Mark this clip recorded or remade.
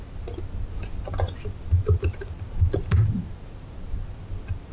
recorded